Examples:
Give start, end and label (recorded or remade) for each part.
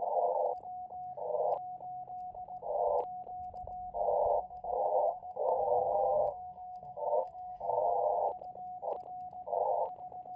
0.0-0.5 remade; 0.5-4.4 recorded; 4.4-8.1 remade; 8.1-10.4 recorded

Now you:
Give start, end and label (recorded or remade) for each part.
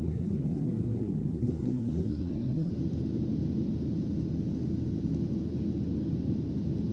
0.0-2.7 remade; 2.7-6.9 recorded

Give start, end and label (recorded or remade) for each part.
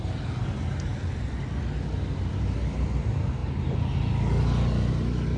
0.0-5.4 recorded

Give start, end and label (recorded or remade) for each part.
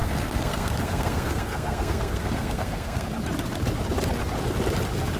0.0-3.1 remade; 3.1-5.2 recorded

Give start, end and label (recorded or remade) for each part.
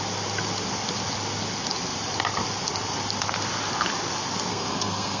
0.0-4.5 recorded; 4.5-5.2 remade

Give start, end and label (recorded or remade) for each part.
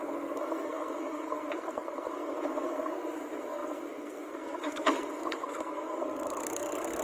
0.0-7.0 remade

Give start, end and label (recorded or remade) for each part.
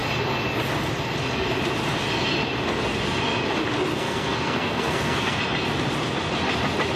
0.0-3.9 recorded; 3.9-5.4 remade; 5.4-7.0 recorded